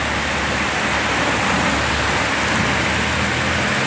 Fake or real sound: real